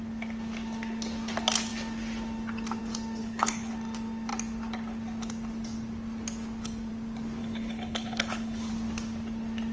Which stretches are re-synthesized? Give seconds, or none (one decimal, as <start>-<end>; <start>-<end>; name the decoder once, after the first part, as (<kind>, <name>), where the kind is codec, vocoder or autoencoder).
3.2-3.7 (codec, HILCodec); 7.4-8.7